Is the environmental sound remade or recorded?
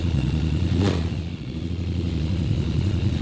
remade